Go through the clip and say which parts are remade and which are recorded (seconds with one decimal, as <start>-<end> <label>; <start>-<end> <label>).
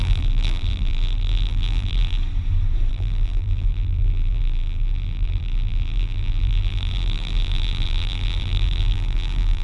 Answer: 0.0-2.2 remade; 2.2-2.9 recorded; 2.9-9.6 remade